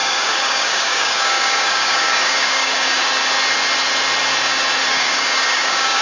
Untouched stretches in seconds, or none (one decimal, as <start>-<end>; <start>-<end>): 3.0-4.9